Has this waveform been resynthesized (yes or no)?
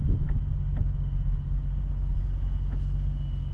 no